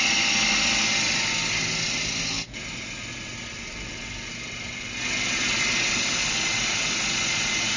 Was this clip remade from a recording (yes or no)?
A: no